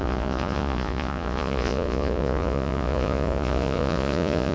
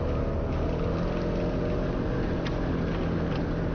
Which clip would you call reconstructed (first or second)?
first